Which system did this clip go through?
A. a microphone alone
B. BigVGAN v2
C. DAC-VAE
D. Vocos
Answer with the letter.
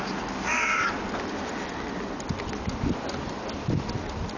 A